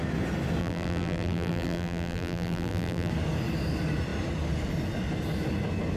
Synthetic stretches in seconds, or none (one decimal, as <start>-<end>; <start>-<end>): 0.6-3.1